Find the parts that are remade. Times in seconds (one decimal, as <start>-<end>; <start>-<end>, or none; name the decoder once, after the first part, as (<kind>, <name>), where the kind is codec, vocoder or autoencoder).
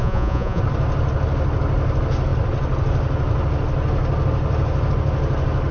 0.0-0.6 (vocoder, Vocos)